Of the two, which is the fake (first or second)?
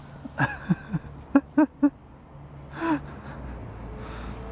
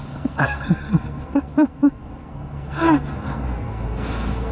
second